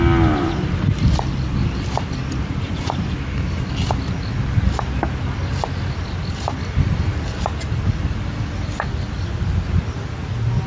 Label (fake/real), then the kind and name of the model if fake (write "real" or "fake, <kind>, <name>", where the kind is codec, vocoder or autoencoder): real